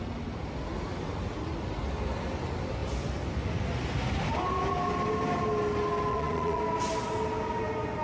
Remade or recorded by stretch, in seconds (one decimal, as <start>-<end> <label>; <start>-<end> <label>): 0.0-6.1 recorded; 6.1-6.6 remade; 6.6-8.0 recorded